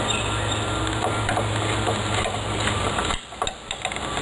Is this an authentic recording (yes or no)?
yes